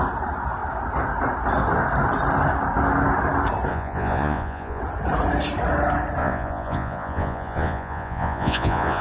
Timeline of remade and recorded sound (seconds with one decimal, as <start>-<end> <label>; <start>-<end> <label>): 0.0-3.7 recorded; 3.7-4.8 remade; 4.8-6.2 recorded; 6.2-9.0 remade